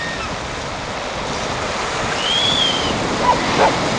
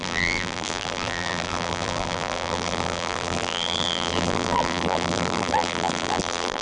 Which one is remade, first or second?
second